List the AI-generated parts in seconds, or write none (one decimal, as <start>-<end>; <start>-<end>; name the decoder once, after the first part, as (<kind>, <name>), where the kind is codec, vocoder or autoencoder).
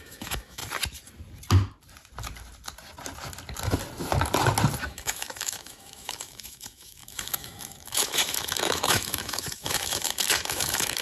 0.0-0.6 (autoencoder, DAC-VAE); 4.8-11.0